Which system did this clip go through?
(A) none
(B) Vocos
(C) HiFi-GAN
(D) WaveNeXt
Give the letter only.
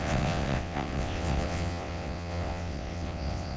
D